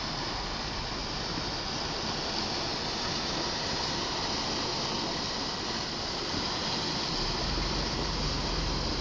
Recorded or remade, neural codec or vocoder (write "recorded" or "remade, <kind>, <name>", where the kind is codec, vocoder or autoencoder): recorded